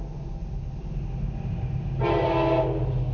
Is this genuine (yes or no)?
yes